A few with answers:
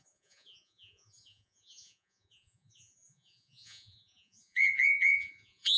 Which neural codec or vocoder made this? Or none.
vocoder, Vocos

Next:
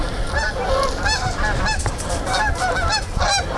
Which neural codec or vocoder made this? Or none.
none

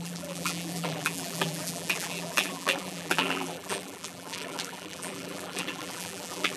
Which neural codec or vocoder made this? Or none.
vocoder, BigVGAN v2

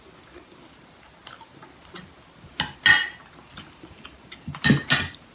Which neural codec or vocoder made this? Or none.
none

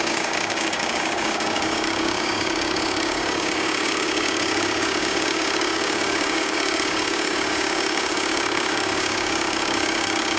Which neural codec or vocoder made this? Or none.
codec, DAC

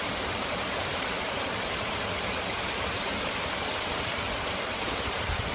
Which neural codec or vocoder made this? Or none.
vocoder, BigVGAN v2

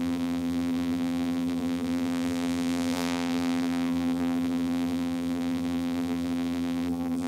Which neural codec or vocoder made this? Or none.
vocoder, BigVGAN v2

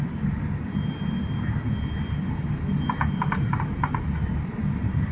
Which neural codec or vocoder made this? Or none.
none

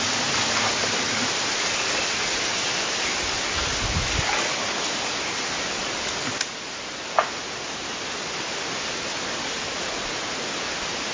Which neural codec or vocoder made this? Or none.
none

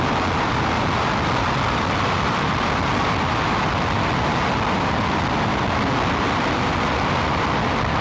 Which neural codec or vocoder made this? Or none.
vocoder, BigVGAN v2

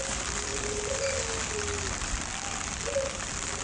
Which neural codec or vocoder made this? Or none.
none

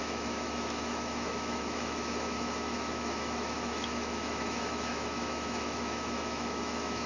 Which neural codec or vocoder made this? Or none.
autoencoder, DAC-VAE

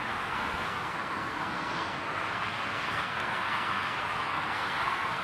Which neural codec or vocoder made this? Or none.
codec, SNAC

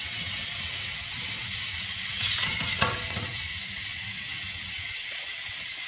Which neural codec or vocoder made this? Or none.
vocoder, WaveNeXt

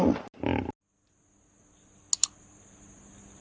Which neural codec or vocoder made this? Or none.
none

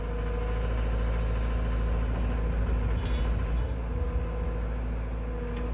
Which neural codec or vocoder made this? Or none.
none